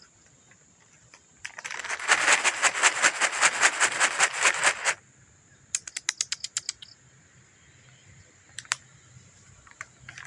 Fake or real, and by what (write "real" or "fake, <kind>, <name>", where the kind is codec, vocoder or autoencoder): real